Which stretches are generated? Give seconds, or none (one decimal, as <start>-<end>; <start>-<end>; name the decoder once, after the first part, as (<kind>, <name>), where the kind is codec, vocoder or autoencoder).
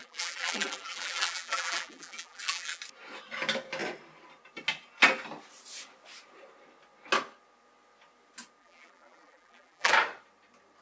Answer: 0.0-2.8 (vocoder, BigVGAN v2); 8.6-9.9